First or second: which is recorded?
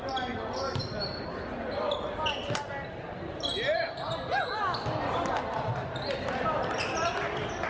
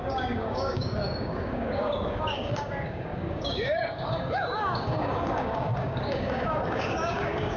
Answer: first